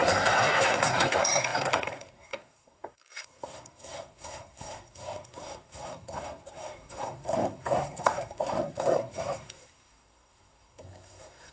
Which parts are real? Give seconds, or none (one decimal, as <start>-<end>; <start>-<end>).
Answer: none